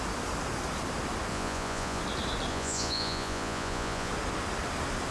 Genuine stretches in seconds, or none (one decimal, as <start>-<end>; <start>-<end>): 0.0-1.3; 2.0-2.5; 4.1-5.1